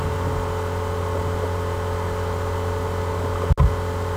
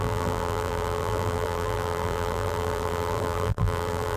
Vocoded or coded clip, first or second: second